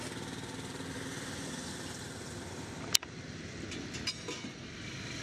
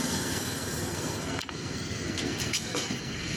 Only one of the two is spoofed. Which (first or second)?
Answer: second